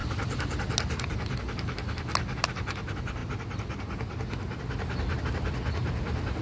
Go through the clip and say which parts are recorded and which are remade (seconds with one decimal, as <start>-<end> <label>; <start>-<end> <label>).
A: 0.0-6.4 recorded